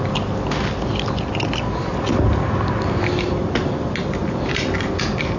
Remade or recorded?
recorded